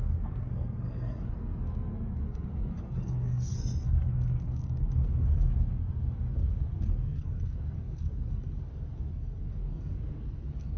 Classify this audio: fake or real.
fake